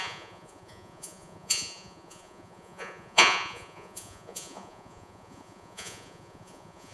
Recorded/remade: remade